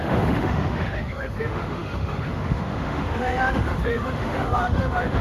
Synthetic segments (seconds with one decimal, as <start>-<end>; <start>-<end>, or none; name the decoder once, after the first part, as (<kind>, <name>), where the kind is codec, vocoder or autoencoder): 0.0-5.2 (autoencoder, DAC-VAE)